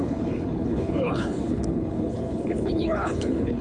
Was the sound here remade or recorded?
remade